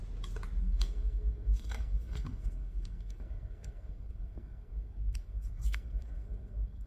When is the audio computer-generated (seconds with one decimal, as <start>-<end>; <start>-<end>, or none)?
0.6-6.9